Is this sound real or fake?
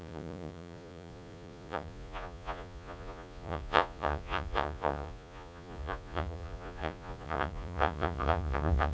fake